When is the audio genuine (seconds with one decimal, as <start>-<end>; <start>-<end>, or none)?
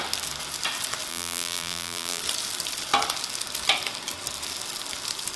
0.0-1.1; 2.2-5.4